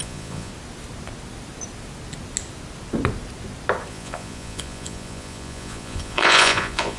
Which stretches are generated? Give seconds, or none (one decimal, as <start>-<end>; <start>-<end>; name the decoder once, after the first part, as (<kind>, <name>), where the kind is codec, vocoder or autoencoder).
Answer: 0.0-0.5 (vocoder, Vocos); 3.9-7.0